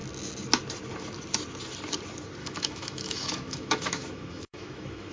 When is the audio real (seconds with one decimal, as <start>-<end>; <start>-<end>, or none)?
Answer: 0.0-2.4